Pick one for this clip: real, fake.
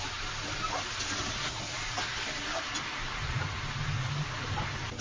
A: real